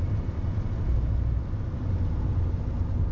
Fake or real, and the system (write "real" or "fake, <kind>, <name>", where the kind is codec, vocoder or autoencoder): real